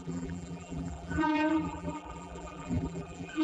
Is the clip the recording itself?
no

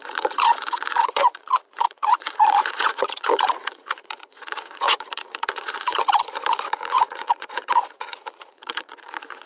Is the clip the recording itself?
no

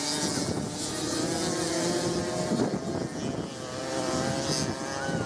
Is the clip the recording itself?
yes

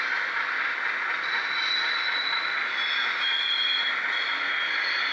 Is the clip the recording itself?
yes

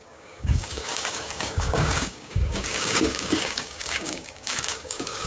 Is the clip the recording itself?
no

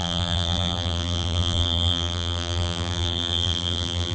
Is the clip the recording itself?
no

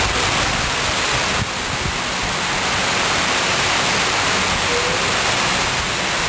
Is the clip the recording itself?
yes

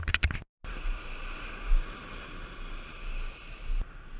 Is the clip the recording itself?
yes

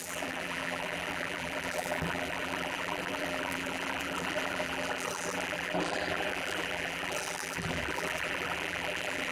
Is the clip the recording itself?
no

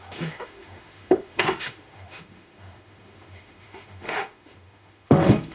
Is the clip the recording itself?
no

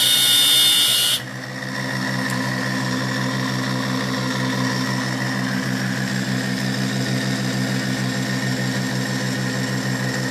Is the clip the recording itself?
yes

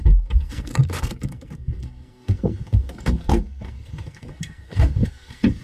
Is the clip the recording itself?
no